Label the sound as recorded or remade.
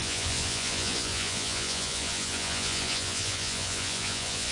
remade